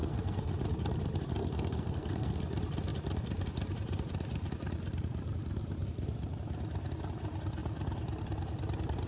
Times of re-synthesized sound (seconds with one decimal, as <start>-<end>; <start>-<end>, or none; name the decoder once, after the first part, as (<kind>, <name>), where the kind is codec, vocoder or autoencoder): 0.0-0.5 (codec, SNAC); 1.4-2.4